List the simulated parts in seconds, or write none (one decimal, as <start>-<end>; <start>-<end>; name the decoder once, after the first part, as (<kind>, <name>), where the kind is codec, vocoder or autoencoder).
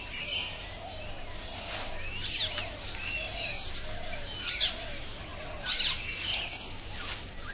none